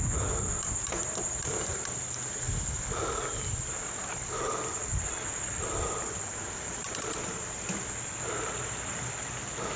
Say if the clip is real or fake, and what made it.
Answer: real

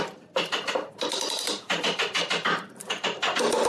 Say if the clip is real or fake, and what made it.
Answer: real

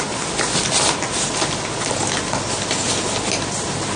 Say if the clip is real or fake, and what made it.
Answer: real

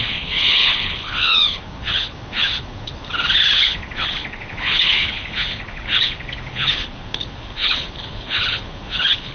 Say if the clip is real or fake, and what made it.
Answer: fake, codec, HILCodec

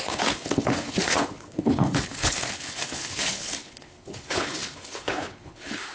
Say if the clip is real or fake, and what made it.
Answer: fake, codec, HILCodec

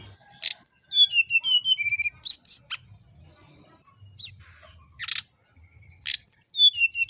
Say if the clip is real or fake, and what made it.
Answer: real